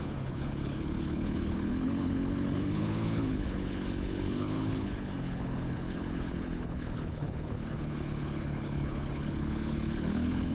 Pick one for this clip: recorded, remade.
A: remade